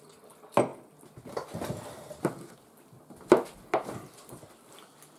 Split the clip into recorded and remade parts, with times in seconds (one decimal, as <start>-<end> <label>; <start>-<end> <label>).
0.0-5.2 recorded

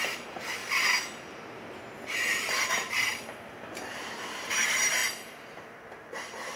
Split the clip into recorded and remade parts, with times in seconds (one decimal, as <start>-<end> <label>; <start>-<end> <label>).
0.0-0.6 remade; 0.6-2.7 recorded; 2.7-6.6 remade

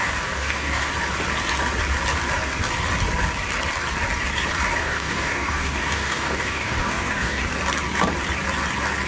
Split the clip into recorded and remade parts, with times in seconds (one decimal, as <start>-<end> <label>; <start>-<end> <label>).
0.0-0.9 remade; 0.9-4.8 recorded; 4.8-7.4 remade; 7.4-9.1 recorded

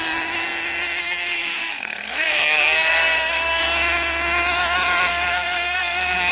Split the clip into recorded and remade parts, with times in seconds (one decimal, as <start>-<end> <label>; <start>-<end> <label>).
0.0-1.0 recorded; 1.0-3.6 remade; 3.6-5.1 recorded; 5.1-6.3 remade

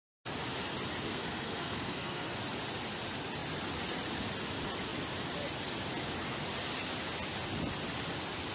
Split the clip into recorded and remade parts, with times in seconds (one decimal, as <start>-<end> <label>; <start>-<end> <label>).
0.0-1.1 recorded; 1.1-2.4 remade; 2.4-8.5 recorded

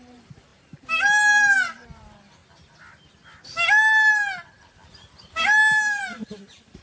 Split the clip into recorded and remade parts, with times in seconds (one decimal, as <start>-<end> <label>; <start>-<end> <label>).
0.0-2.4 remade; 2.4-5.4 recorded; 5.4-6.8 remade

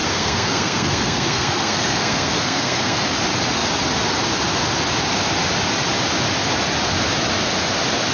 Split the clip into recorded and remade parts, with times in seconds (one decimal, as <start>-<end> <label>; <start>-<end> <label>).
0.0-3.2 remade; 3.2-8.1 recorded

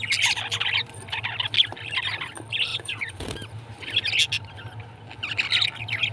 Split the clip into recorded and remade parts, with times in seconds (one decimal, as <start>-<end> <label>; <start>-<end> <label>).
0.0-2.7 recorded; 2.7-3.5 remade; 3.5-6.1 recorded